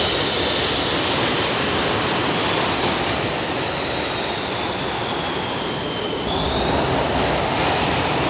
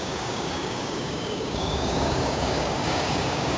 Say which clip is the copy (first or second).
second